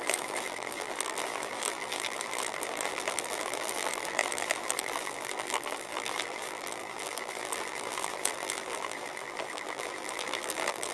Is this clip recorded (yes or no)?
no